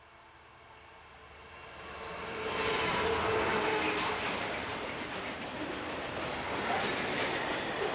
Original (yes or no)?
yes